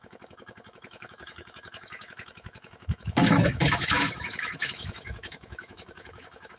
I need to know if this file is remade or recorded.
remade